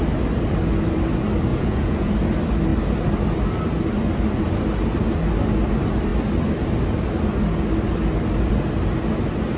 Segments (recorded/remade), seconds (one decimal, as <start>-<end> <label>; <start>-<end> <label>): 0.0-1.5 recorded; 1.5-2.1 remade; 2.1-9.6 recorded